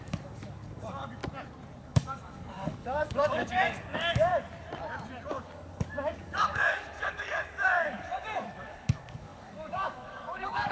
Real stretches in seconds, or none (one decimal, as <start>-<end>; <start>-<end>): 1.2-1.8; 4.3-5.3